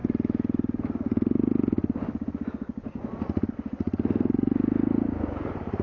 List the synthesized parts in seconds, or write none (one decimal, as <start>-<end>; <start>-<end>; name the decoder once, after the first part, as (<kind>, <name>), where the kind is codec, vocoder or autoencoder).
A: none